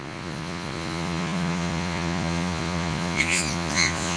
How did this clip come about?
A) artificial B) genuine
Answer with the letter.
A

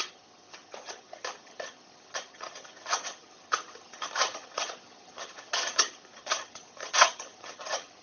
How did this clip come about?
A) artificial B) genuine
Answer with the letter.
A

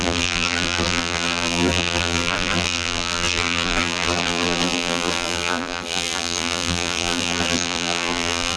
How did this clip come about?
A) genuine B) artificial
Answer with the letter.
B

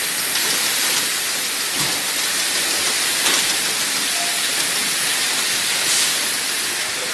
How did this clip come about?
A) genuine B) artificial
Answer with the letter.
A